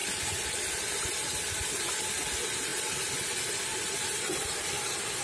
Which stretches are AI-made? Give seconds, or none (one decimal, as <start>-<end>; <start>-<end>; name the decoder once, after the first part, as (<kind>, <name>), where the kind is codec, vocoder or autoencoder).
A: none